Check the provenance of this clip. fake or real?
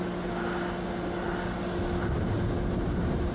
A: real